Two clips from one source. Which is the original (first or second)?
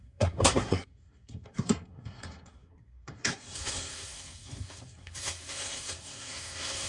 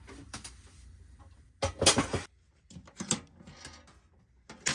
second